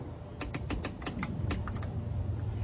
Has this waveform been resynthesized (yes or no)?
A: no